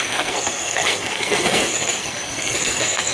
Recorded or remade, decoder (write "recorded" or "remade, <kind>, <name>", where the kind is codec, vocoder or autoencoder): remade, codec, SNAC